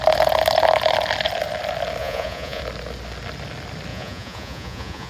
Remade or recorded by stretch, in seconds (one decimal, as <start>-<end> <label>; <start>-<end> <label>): 0.0-2.0 recorded; 2.0-2.6 remade; 2.6-3.9 recorded; 3.9-5.1 remade